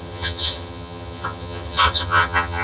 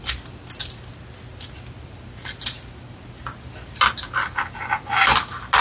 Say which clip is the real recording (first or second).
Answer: second